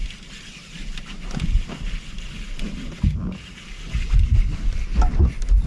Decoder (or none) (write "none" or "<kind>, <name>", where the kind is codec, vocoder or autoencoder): none